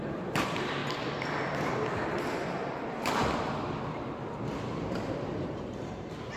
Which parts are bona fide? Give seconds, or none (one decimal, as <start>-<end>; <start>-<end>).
0.8-1.6; 3.2-4.8